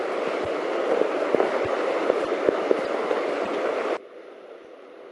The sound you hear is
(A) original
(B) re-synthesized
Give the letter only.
A